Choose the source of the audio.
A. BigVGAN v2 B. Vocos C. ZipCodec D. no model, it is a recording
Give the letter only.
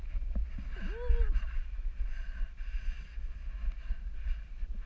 D